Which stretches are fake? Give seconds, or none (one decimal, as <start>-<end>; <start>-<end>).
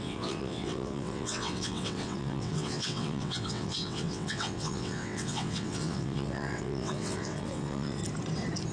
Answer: 0.0-8.0